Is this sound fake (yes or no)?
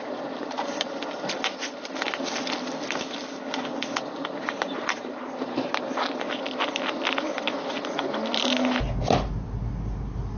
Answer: no